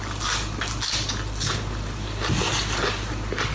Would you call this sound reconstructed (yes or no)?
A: no